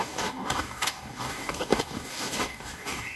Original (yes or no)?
no